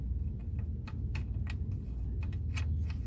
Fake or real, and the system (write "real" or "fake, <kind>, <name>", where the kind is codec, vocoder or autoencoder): real